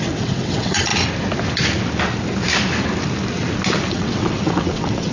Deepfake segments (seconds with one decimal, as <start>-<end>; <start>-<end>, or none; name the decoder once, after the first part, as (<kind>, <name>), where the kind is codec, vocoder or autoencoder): 0.0-0.9 (vocoder, WaveNeXt); 3.9-5.1